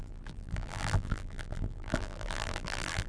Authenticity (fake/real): fake